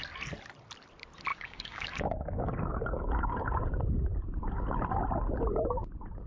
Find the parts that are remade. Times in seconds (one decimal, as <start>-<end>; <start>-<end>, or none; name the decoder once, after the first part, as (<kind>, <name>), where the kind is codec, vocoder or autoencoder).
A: 1.3-3.6 (codec, DAC)